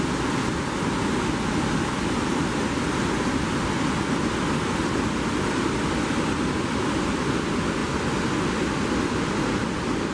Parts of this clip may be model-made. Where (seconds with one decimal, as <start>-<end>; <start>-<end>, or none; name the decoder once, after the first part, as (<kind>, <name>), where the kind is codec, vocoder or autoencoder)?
none

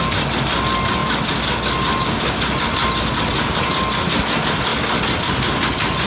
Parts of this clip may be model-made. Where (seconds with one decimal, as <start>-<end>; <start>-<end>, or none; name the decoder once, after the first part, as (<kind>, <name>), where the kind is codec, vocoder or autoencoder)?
none